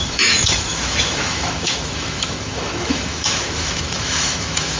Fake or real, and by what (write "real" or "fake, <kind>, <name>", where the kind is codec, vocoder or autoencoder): fake, autoencoder, DAC-VAE